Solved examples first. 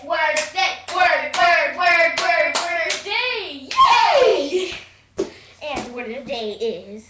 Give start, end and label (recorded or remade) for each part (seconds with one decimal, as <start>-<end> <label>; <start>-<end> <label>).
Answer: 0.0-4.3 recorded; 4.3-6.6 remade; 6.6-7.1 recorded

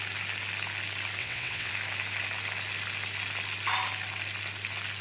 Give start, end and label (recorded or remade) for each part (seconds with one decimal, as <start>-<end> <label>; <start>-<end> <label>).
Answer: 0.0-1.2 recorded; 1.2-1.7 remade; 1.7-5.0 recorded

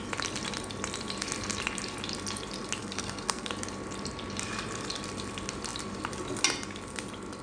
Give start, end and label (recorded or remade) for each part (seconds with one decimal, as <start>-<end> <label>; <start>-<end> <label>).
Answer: 0.0-2.8 recorded; 2.8-3.5 remade; 3.5-7.4 recorded

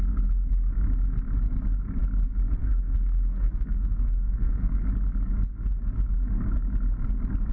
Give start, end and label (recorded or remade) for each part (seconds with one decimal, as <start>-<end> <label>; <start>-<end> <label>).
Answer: 0.0-2.6 recorded; 2.6-4.8 remade; 4.8-7.5 recorded

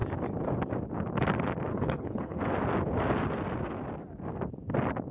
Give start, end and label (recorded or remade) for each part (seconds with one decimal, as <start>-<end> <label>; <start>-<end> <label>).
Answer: 0.0-1.7 recorded; 1.7-2.4 remade; 2.4-5.1 recorded

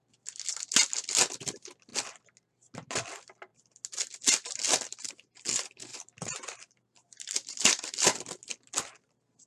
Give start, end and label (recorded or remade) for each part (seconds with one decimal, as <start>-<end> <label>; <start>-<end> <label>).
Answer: 0.0-5.9 recorded; 5.9-8.0 remade; 8.0-9.5 recorded